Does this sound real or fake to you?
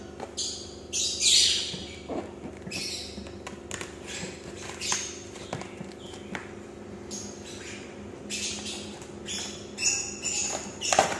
real